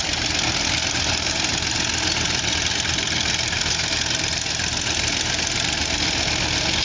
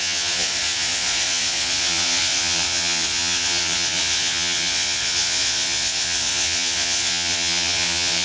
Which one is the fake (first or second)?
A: second